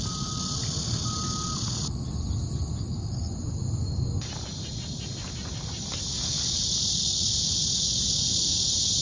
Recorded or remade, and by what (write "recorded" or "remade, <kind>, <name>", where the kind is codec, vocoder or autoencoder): recorded